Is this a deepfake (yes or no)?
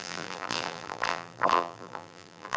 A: yes